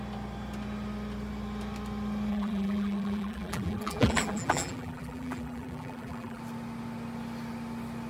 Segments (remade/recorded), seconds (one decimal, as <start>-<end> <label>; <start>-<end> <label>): 0.0-2.3 recorded; 2.3-6.4 remade; 6.4-8.1 recorded

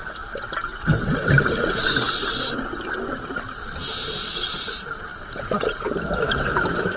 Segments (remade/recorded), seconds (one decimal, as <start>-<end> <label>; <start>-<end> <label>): 0.0-1.6 recorded; 1.6-2.2 remade; 2.2-3.1 recorded; 3.1-7.0 remade

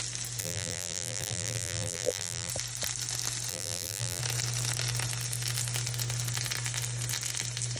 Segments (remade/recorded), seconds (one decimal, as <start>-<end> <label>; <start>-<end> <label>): 0.0-0.4 recorded; 0.4-2.5 remade; 2.5-3.5 recorded; 3.5-4.2 remade; 4.2-7.8 recorded

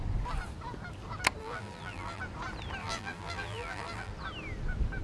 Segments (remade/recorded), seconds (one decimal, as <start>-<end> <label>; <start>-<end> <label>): 0.0-1.4 recorded; 1.4-2.2 remade; 2.2-2.8 recorded; 2.8-4.1 remade; 4.1-5.0 recorded